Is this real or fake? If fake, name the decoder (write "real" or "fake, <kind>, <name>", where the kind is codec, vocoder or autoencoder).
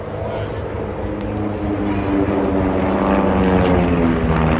real